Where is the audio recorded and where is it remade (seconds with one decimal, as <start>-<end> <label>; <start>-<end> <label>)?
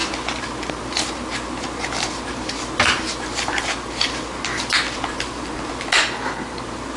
0.0-7.0 recorded